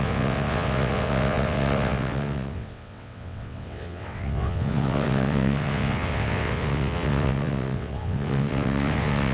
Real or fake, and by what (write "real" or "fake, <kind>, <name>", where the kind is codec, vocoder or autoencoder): fake, vocoder, WaveNeXt